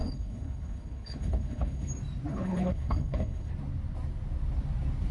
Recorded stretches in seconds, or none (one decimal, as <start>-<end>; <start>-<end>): 1.9-2.3; 3.5-5.1